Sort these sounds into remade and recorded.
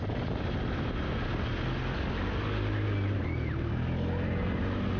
recorded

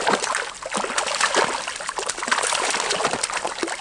recorded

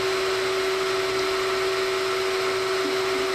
recorded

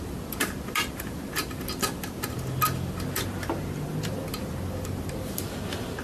recorded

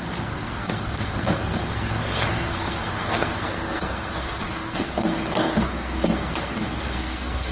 remade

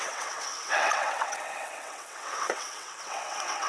remade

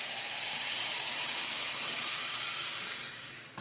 remade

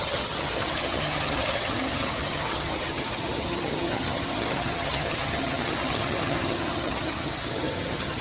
remade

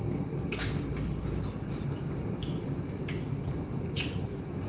recorded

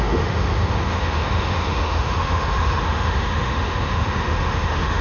remade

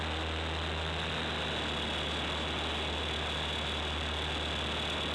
recorded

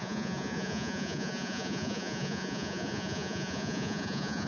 remade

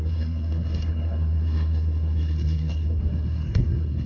remade